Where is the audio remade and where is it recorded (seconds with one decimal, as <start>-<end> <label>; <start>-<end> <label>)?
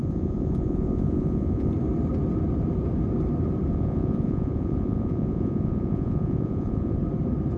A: 0.0-1.7 remade; 1.7-3.7 recorded; 3.7-7.0 remade; 7.0-7.6 recorded